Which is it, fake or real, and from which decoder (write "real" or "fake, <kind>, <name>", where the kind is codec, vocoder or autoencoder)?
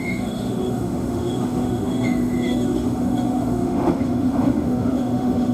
fake, autoencoder, DAC-VAE